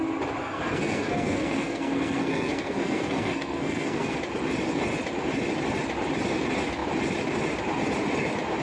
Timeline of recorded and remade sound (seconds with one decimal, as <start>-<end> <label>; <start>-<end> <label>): 0.0-0.4 recorded; 0.4-4.2 remade; 4.2-8.6 recorded